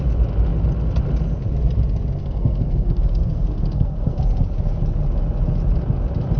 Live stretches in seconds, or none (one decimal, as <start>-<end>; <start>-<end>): 0.0-2.2; 4.2-6.4